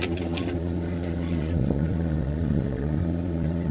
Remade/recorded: remade